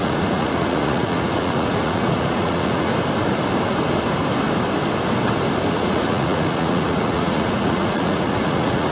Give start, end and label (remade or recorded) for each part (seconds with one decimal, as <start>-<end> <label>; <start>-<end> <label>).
0.0-2.9 remade; 2.9-5.7 recorded; 5.7-8.9 remade